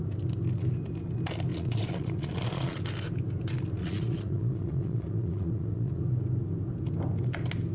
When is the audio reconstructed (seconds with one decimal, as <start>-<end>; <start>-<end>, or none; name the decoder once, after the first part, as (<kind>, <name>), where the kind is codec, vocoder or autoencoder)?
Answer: 1.5-2.8 (vocoder, Vocos); 3.8-6.0